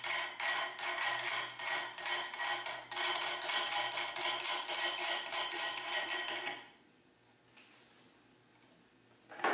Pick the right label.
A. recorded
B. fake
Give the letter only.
A